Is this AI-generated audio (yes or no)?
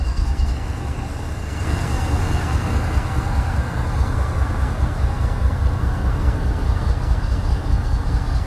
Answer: yes